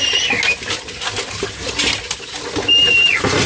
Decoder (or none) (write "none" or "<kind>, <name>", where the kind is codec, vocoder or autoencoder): none